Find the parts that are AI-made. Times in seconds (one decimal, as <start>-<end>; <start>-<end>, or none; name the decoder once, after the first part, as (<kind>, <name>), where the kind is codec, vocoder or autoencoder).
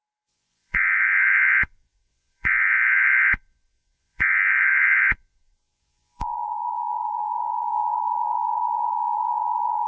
0.0-9.9 (vocoder, Vocos)